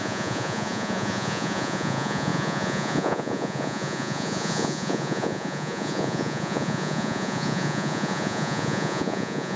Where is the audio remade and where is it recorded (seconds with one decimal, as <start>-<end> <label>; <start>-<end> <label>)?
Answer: 0.0-9.6 remade